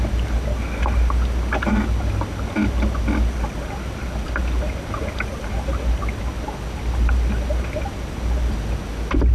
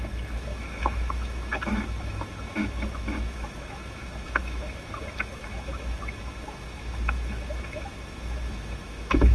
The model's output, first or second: second